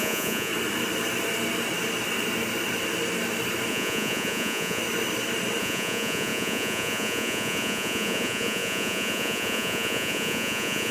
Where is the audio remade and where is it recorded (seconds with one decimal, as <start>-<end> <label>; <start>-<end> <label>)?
0.0-0.5 remade; 0.5-3.7 recorded; 3.7-4.8 remade; 4.8-5.6 recorded; 5.6-10.9 remade